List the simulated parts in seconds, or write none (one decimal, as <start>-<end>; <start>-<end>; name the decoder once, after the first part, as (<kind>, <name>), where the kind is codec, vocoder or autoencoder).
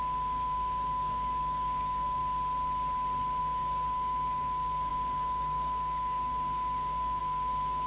0.0-2.2 (codec, DAC); 3.4-7.9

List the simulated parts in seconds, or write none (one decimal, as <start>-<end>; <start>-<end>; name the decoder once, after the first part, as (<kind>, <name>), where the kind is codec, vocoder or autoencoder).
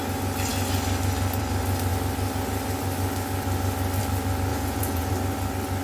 4.5-5.1 (vocoder, Vocos)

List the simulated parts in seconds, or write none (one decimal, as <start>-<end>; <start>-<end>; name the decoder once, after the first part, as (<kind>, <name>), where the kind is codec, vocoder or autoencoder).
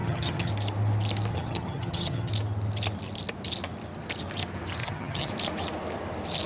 0.0-0.5 (vocoder, HiFi-GAN); 1.3-2.3; 4.8-5.3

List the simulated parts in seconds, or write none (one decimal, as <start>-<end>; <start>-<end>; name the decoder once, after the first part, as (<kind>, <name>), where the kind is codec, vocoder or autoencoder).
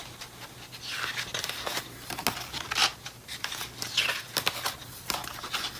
1.3-1.8 (vocoder, BigVGAN v2); 2.8-3.5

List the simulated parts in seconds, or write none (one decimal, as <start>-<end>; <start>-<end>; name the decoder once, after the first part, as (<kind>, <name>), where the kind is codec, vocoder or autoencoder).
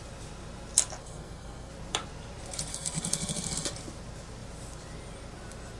1.0-1.7 (codec, SNAC); 2.7-3.7